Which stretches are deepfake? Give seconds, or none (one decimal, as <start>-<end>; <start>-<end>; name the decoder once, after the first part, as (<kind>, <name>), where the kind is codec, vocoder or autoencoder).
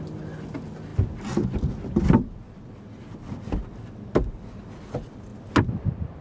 none